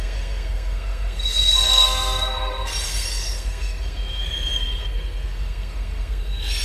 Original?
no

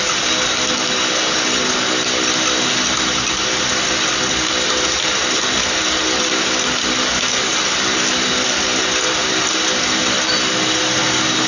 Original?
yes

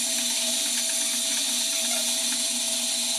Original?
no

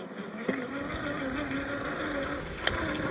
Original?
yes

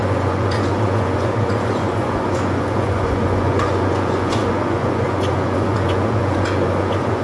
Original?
no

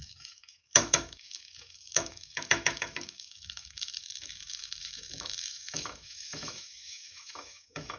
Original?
no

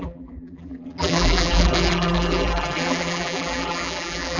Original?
no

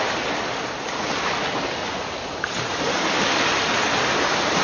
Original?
yes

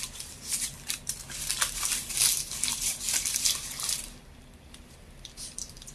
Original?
no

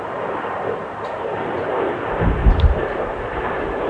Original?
no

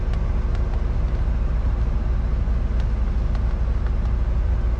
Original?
yes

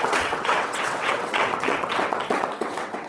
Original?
no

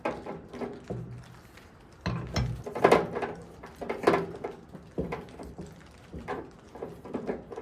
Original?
yes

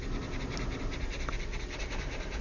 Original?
yes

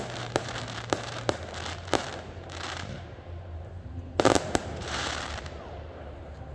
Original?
no